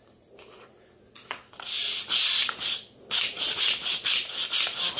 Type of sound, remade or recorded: remade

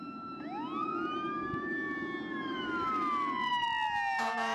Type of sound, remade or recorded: recorded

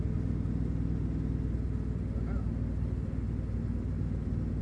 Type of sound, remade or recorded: recorded